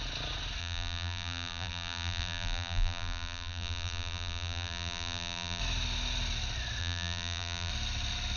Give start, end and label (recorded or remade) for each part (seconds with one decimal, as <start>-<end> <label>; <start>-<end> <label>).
0.0-0.6 recorded; 0.6-5.6 remade; 5.6-6.8 recorded; 6.8-7.7 remade; 7.7-8.4 recorded